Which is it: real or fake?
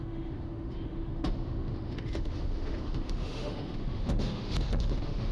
fake